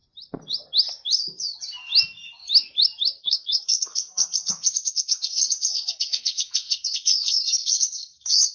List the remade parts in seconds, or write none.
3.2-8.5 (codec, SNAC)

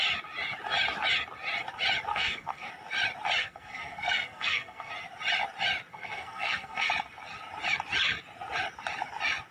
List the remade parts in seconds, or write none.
2.1-2.7 (codec, SNAC); 3.4-4.9; 5.9-6.9

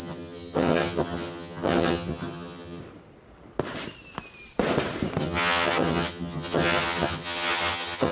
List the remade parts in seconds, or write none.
0.0-2.8 (vocoder, HiFi-GAN); 5.2-8.1

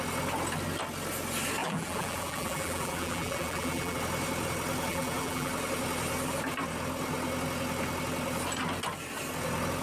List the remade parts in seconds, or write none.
1.6-4.0 (vocoder, BigVGAN v2); 4.9-5.5

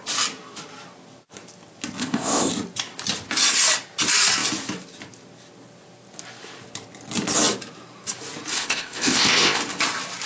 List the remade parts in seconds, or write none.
2.0-2.5 (codec, ZipCodec); 8.5-9.6

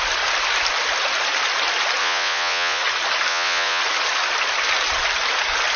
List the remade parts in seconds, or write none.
2.0-2.8 (vocoder, Vocos); 3.3-3.8